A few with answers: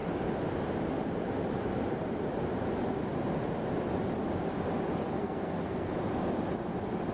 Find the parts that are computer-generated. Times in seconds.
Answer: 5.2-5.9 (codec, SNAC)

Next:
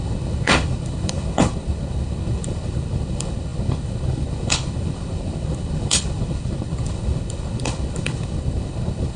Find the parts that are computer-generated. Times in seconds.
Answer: 0.0-9.2 (codec, HILCodec)

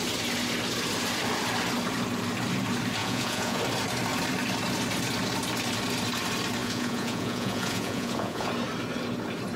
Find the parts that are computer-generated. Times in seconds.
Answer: 3.0-3.6 (vocoder, Vocos); 6.6-8.5

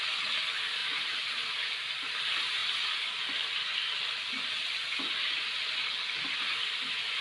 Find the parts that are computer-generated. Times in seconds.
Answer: 0.8-2.2 (vocoder, BigVGAN v2)

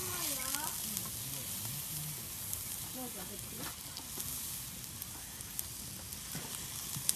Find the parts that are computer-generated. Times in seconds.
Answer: none